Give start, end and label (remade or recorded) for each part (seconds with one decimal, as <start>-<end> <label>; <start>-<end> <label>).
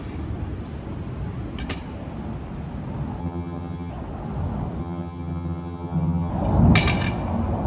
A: 0.0-3.2 recorded; 3.2-3.9 remade; 3.9-4.8 recorded; 4.8-6.3 remade; 6.3-7.7 recorded